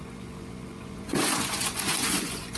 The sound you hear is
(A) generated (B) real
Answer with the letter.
A